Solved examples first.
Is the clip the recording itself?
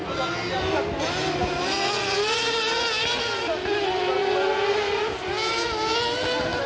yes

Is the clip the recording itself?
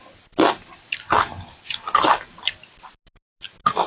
yes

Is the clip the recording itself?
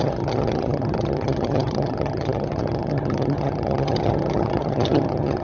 no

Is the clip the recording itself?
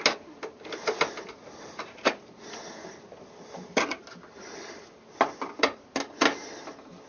yes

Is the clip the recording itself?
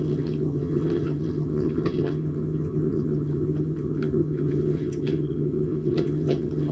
no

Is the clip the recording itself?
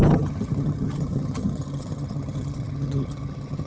no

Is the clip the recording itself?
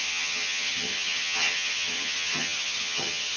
no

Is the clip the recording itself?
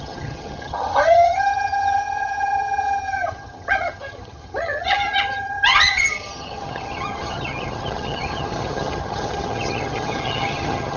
no